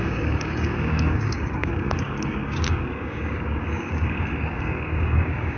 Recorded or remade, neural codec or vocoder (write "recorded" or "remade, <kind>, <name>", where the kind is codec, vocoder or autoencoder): remade, codec, DAC